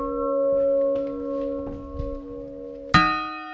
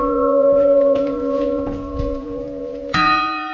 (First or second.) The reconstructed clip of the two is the second